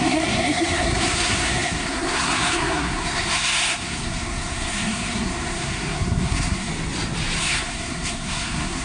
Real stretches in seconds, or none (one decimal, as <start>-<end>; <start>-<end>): 6.7-7.4